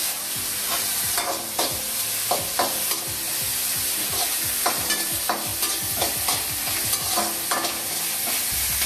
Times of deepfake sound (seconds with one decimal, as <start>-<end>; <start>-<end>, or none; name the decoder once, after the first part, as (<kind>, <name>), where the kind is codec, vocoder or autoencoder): 0.0-1.3 (vocoder, BigVGAN v2)